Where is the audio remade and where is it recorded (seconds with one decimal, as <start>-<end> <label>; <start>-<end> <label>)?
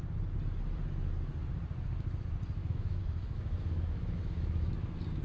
0.0-2.6 recorded; 2.6-4.7 remade; 4.7-5.2 recorded